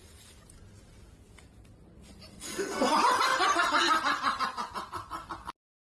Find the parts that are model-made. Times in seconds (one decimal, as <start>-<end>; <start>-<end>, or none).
2.3-2.9